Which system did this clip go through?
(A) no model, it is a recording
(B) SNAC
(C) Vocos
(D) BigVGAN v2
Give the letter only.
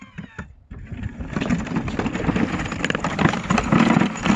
A